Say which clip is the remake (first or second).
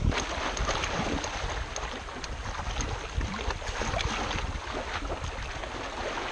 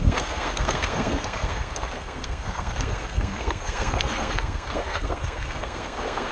second